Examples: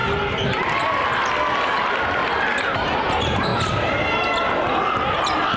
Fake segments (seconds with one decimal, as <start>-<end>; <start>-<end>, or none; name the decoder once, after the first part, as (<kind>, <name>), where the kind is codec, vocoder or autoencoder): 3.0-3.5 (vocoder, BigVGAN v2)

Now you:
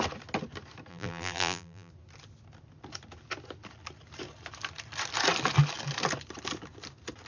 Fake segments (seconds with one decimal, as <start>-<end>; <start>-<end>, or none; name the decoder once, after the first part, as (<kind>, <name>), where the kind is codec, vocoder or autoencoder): 0.9-1.9 (vocoder, BigVGAN v2)

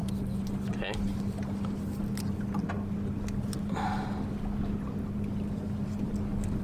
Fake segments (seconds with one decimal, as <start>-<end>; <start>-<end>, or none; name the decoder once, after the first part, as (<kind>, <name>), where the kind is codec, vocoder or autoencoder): none

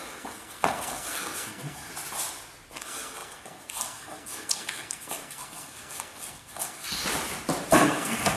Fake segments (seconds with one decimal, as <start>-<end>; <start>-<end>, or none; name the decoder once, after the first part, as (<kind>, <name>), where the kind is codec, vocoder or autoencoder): 0.0-1.9 (codec, SNAC); 2.7-7.0; 7.7-8.4

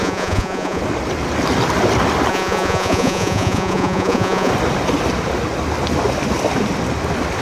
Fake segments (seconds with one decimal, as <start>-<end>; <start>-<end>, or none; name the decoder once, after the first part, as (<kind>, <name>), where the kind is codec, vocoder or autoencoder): 0.0-0.8 (vocoder, Vocos); 2.3-4.5